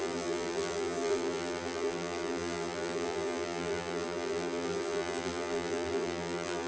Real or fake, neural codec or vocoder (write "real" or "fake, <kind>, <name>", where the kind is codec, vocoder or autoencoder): fake, vocoder, BigVGAN v2